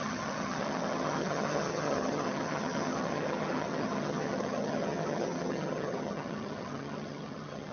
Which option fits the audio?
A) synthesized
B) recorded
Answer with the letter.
A